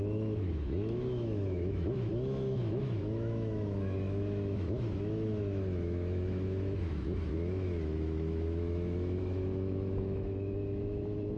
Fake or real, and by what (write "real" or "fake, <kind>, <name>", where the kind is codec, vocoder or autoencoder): fake, autoencoder, DAC-VAE